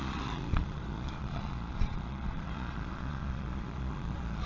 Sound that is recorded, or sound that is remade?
remade